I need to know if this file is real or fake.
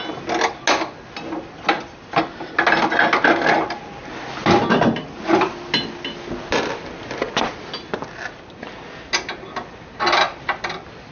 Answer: real